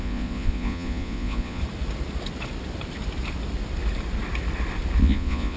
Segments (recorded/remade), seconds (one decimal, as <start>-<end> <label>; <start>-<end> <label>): 0.0-1.6 remade; 1.6-5.0 recorded; 5.0-5.6 remade